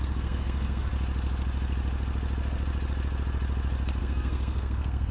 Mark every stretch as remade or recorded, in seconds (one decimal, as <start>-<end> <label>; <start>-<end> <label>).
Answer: 0.0-0.9 remade; 0.9-4.0 recorded; 4.0-5.1 remade